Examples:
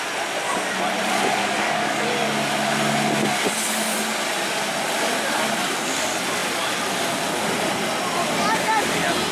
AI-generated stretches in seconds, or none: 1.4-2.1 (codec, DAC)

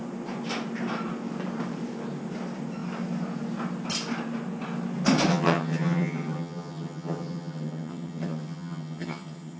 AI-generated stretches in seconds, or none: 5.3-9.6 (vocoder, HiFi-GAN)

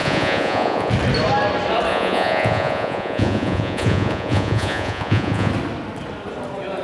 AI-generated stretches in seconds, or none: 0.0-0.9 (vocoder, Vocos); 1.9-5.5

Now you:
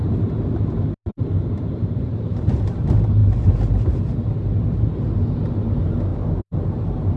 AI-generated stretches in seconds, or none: 1.2-7.2 (vocoder, BigVGAN v2)

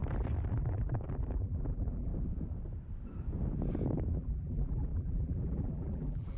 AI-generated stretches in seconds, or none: 0.5-2.1 (vocoder, BigVGAN v2); 4.1-6.4

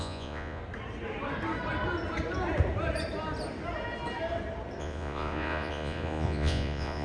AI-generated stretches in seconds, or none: 0.0-0.6 (vocoder, Vocos); 4.8-7.0

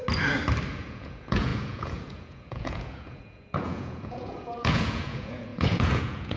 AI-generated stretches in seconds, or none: 0.7-6.4 (vocoder, Vocos)